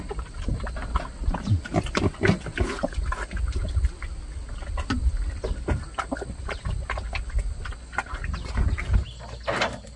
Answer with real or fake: real